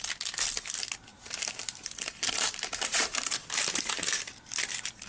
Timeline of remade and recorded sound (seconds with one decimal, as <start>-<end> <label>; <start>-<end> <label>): 0.0-1.1 recorded; 1.1-4.2 remade; 4.2-5.1 recorded